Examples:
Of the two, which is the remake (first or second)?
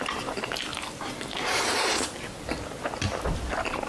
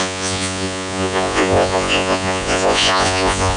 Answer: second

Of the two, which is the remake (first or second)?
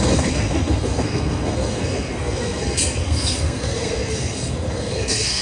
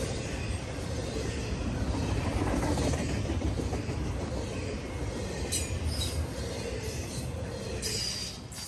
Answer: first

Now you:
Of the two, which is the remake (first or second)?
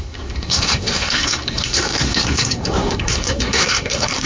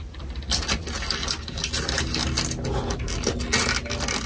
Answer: first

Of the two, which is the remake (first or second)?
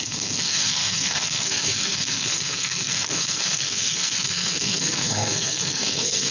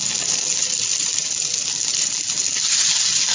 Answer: first